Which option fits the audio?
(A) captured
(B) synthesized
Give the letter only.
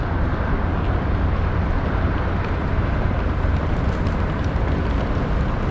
A